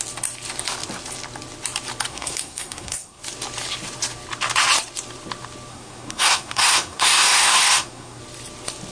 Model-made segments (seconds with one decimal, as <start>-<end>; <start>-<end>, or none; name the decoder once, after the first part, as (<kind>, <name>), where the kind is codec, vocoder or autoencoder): 2.1-3.2 (codec, SNAC); 5.7-8.2